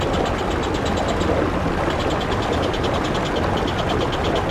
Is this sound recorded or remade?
recorded